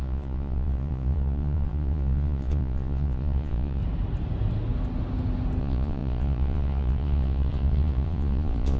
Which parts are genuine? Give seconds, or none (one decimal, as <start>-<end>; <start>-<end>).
3.8-5.6